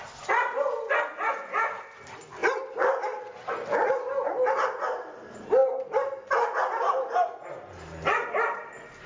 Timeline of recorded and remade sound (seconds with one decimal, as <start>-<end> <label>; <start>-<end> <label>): 0.0-9.1 recorded